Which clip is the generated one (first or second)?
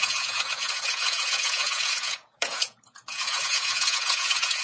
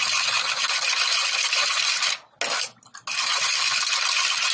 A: first